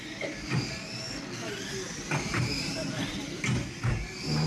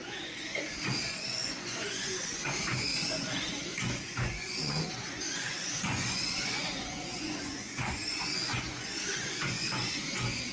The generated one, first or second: second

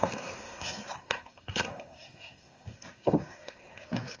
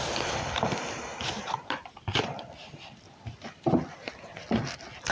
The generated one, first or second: first